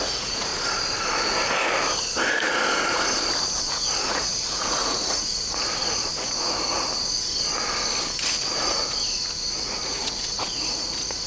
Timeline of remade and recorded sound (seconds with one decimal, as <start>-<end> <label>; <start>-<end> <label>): 0.0-0.5 remade; 0.5-3.6 recorded; 3.6-6.9 remade; 6.9-8.3 recorded; 8.3-8.8 remade; 8.8-9.6 recorded; 9.6-11.3 remade